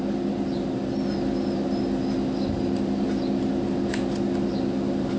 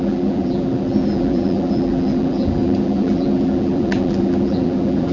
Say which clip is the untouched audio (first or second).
first